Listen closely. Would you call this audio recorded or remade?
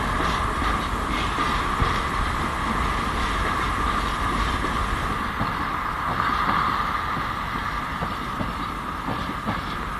recorded